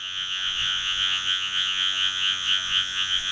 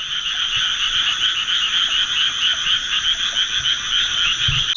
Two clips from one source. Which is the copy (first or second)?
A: first